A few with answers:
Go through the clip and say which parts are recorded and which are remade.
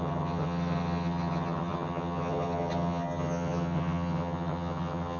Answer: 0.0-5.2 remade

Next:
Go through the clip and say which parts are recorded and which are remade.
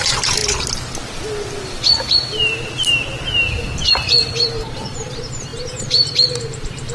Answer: 0.0-0.4 remade; 0.4-4.3 recorded; 4.3-6.9 remade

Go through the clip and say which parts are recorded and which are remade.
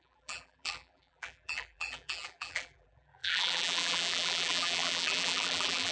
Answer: 0.0-5.9 remade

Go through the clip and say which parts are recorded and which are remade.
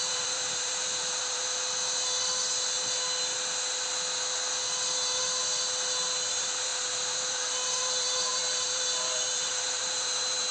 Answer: 0.0-1.4 remade; 1.4-6.3 recorded; 6.3-10.5 remade